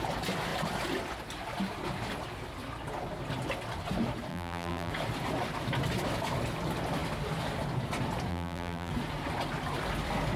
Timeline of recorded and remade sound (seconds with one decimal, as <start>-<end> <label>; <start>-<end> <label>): 0.0-4.3 recorded; 4.3-4.9 remade; 4.9-8.3 recorded; 8.3-8.9 remade; 8.9-10.4 recorded

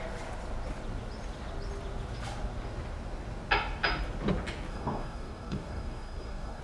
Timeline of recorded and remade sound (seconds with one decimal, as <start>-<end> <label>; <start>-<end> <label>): 0.0-4.7 recorded; 4.7-6.6 remade

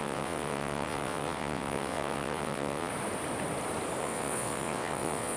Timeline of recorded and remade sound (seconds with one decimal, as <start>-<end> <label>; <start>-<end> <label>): 0.0-2.9 remade; 2.9-4.0 recorded; 4.0-5.4 remade

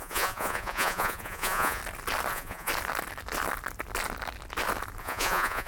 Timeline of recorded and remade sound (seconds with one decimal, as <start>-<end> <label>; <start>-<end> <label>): 0.0-1.8 remade; 1.8-2.3 recorded; 2.3-2.7 remade; 2.7-5.0 recorded; 5.0-5.7 remade

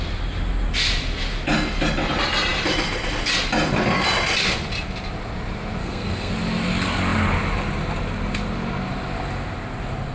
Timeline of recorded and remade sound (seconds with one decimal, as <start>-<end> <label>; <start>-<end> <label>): 0.0-5.8 recorded; 5.8-6.3 remade; 6.3-10.1 recorded

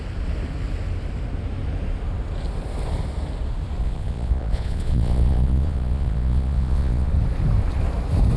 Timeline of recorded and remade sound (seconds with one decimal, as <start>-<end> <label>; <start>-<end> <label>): 0.0-3.8 recorded; 3.8-7.1 remade; 7.1-8.4 recorded

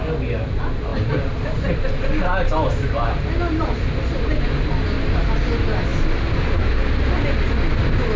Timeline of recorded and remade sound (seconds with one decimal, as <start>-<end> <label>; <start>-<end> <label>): 0.0-8.2 recorded

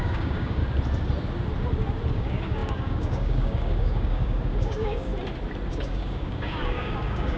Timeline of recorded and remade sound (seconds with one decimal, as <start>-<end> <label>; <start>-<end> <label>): 0.0-0.6 remade; 0.6-2.1 recorded; 2.1-5.1 remade; 5.1-5.7 recorded; 5.7-7.4 remade